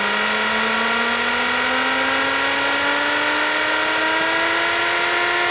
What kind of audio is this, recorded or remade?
recorded